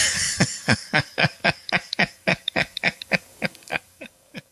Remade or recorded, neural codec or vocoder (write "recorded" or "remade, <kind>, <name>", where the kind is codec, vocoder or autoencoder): remade, codec, DAC